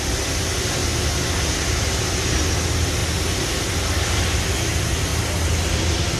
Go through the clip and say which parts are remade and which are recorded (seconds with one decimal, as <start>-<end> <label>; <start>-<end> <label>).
0.0-0.8 recorded; 0.8-2.5 remade; 2.5-6.2 recorded